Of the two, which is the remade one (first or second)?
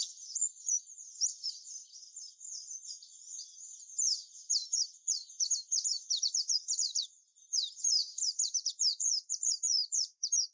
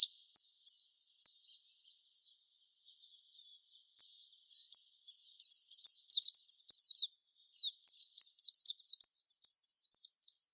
first